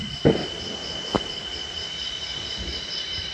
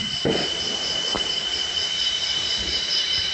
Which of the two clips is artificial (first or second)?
second